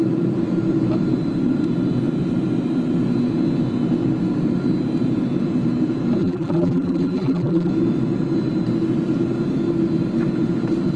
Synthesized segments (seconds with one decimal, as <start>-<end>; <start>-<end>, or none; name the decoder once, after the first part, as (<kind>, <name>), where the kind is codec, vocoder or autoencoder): 6.2-7.7 (vocoder, BigVGAN v2)